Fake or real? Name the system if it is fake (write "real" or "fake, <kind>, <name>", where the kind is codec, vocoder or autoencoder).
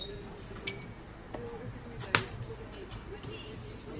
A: real